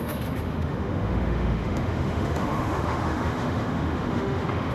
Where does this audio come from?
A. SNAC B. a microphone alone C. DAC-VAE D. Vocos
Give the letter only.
C